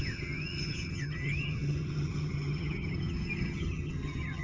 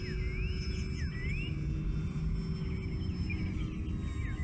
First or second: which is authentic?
second